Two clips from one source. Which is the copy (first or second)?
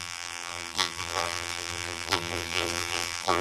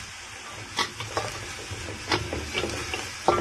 first